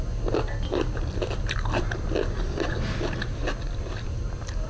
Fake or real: real